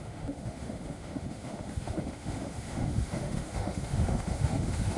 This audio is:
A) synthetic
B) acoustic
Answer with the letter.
A